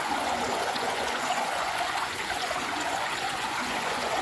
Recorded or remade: remade